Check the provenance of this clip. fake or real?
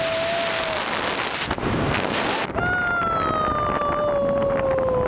real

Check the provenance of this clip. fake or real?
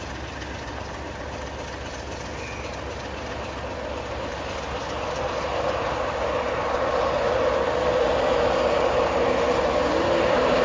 real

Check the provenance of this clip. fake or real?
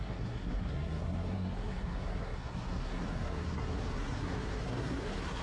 fake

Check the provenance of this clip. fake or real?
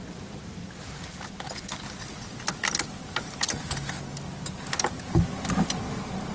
real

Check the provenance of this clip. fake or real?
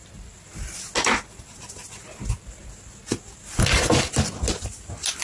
real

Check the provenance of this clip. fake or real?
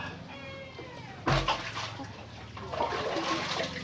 real